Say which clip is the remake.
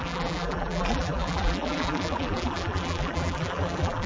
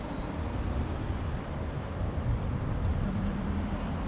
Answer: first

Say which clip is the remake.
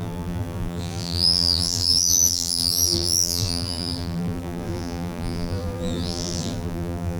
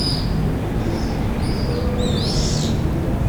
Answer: first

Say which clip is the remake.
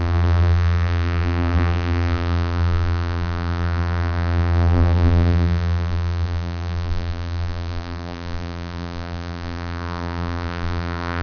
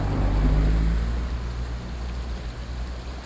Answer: first